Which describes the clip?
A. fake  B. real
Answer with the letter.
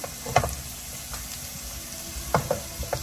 B